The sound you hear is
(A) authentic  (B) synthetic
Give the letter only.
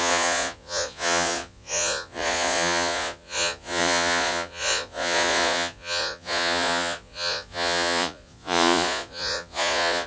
B